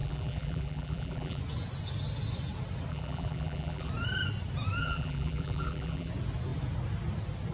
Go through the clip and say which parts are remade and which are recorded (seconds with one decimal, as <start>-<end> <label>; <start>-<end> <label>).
0.0-1.4 remade; 1.4-2.9 recorded; 2.9-3.9 remade; 3.9-4.8 recorded; 4.8-6.1 remade; 6.1-7.5 recorded